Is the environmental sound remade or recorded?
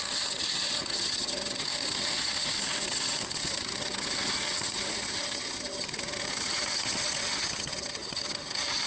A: remade